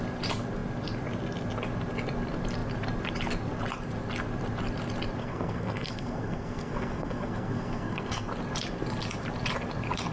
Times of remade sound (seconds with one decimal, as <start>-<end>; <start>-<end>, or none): 5.2-8.3